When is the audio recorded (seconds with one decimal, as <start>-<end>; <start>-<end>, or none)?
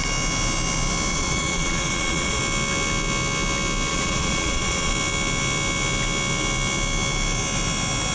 0.0-1.1; 2.4-3.9; 4.9-8.1